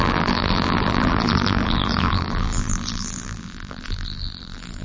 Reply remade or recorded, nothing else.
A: remade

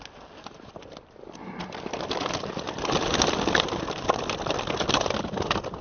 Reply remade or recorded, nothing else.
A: recorded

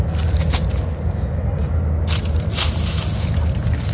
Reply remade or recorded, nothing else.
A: recorded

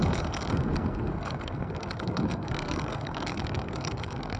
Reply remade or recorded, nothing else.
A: remade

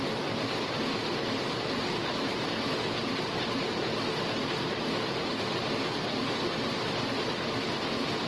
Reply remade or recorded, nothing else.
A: recorded